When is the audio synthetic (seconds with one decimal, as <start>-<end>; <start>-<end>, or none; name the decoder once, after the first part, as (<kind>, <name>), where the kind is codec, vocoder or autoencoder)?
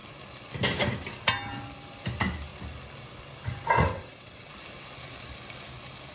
3.9-4.5 (vocoder, WaveNeXt)